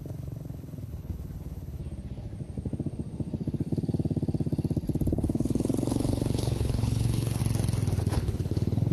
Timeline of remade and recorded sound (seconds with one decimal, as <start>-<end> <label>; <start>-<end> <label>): 0.0-1.8 remade; 1.8-5.1 recorded; 5.1-7.4 remade; 7.4-8.0 recorded; 8.0-8.9 remade